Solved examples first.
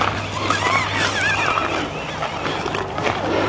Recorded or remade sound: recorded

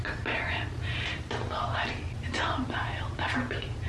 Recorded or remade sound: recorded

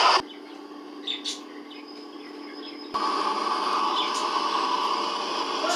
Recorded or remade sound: recorded